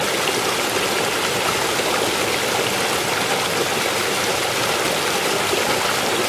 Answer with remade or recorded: recorded